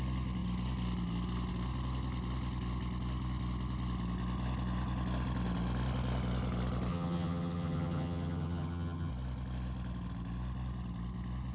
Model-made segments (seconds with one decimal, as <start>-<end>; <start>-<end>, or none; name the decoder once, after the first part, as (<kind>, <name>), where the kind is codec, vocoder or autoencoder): 6.9-9.1 (vocoder, HiFi-GAN)